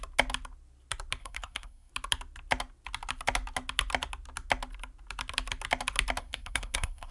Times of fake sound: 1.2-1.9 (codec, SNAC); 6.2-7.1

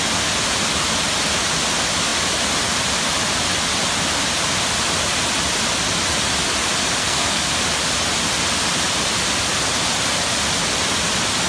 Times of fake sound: 7.0-7.5 (codec, SNAC)